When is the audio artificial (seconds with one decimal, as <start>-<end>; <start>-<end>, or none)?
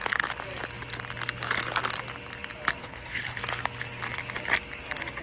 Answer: 2.8-3.4